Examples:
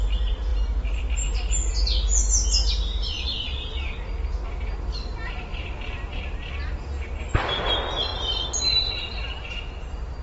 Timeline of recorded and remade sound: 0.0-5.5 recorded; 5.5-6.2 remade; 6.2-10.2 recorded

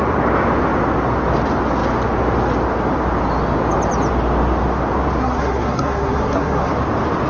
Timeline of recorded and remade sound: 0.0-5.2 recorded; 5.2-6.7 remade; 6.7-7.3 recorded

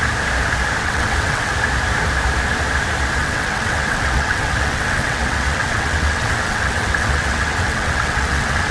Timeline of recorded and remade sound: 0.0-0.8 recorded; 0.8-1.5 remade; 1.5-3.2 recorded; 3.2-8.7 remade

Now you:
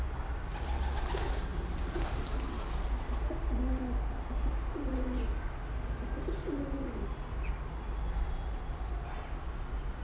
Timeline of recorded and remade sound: 0.0-10.0 recorded

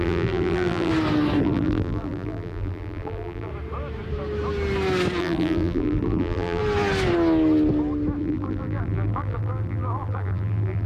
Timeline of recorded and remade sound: 0.0-0.9 remade; 0.9-1.4 recorded; 1.4-3.5 remade; 3.5-5.2 recorded; 5.2-6.6 remade; 6.6-8.2 recorded; 8.2-10.9 remade

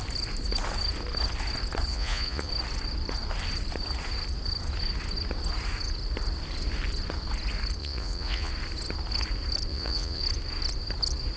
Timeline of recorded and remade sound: 0.0-1.9 recorded; 1.9-2.5 remade; 2.5-7.8 recorded; 7.8-8.5 remade; 8.5-9.7 recorded; 9.7-10.2 remade; 10.2-11.4 recorded

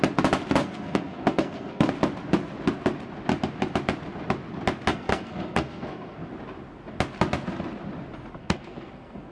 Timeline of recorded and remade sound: 0.0-0.6 recorded; 0.6-1.9 remade; 1.9-4.9 recorded; 4.9-6.3 remade; 6.3-8.3 recorded; 8.3-9.3 remade

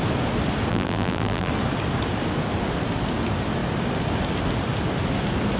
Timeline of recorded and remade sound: 0.0-0.7 recorded; 0.7-1.5 remade; 1.5-5.6 recorded